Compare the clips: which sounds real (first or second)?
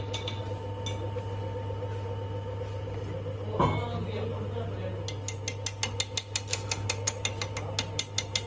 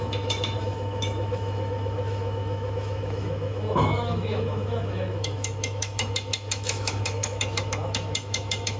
first